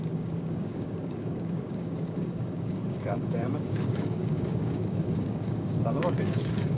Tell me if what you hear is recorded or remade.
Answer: remade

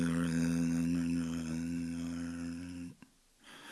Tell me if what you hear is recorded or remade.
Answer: recorded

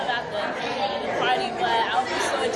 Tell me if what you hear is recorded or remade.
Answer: recorded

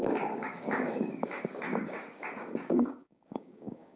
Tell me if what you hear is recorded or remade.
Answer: remade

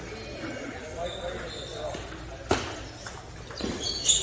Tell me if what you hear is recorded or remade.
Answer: recorded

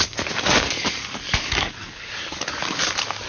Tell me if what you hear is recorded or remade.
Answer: remade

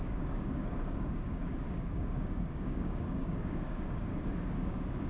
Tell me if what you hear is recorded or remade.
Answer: remade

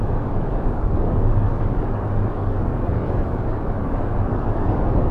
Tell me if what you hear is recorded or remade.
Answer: remade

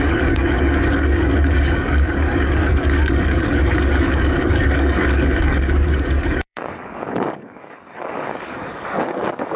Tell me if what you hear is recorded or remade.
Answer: remade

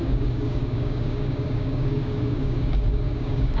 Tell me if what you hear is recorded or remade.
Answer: remade